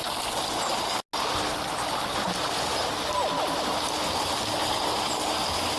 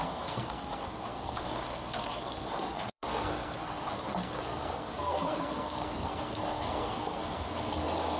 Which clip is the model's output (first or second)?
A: second